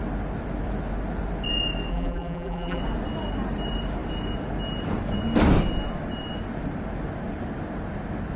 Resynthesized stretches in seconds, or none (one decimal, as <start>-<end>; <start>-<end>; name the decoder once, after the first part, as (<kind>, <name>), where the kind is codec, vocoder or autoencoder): 1.9-2.8 (vocoder, BigVGAN v2)

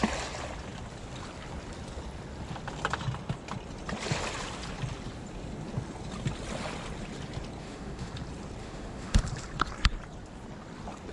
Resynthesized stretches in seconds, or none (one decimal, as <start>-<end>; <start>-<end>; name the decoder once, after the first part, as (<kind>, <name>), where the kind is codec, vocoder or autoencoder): 7.6-8.1 (autoencoder, DAC-VAE); 8.6-9.2

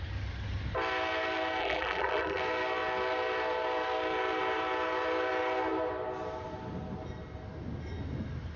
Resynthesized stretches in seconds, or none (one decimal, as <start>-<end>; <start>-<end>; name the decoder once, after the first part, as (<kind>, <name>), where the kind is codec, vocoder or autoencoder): 1.6-2.4 (vocoder, BigVGAN v2)

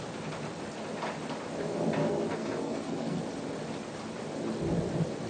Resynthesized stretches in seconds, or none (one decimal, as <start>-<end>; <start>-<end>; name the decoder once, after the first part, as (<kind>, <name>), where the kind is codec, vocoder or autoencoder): 2.0-3.2 (codec, SNAC)

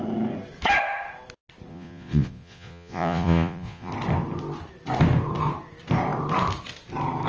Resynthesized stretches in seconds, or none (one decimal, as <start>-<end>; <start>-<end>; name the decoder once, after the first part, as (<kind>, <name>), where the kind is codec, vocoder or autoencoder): 1.7-3.9 (vocoder, Vocos)

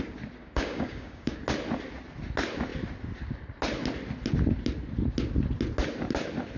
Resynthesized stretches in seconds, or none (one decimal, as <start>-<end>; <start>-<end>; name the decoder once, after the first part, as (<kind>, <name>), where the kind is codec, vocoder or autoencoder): 0.4-1.4 (codec, DAC)